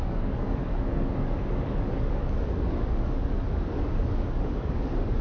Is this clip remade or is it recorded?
remade